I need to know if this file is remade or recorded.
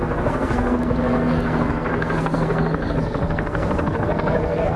remade